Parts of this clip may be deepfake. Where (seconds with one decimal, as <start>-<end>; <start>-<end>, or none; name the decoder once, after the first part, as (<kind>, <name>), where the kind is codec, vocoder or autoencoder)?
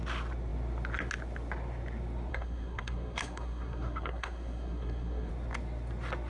2.3-5.3 (codec, SNAC)